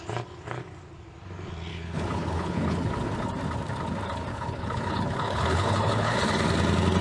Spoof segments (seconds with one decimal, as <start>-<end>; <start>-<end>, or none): 1.7-2.9; 4.3-6.2

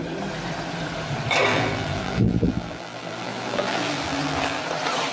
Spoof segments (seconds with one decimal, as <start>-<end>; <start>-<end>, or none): 1.5-4.6

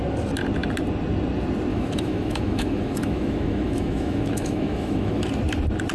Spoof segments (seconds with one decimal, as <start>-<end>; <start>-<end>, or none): 1.7-5.2

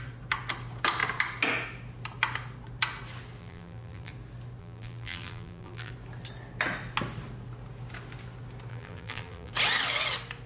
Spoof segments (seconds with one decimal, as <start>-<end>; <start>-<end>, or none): 3.4-4.1; 4.6-5.9; 8.7-9.5

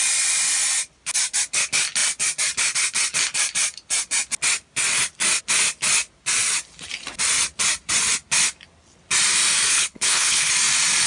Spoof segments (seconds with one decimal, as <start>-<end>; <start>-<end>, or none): 9.7-10.5

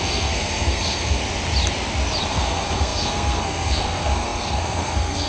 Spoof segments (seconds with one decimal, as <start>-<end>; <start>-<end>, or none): 0.0-1.2; 2.3-5.3

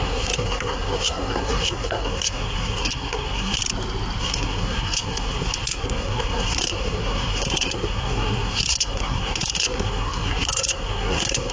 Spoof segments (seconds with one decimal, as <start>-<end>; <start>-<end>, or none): 0.0-3.6; 4.2-11.5